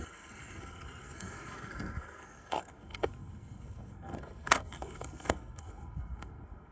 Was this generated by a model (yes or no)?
yes